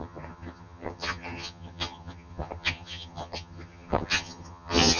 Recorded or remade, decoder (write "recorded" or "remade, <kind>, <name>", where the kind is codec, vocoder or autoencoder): remade, vocoder, HiFi-GAN